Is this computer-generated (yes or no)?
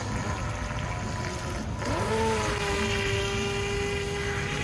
no